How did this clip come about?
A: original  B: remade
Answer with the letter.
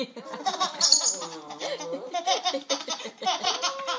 A